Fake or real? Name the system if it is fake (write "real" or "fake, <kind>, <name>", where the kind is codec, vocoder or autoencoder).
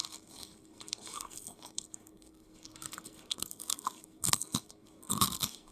fake, codec, SNAC